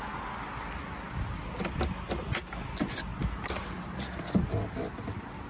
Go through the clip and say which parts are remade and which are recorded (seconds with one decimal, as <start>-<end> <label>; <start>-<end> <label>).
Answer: 0.0-5.5 recorded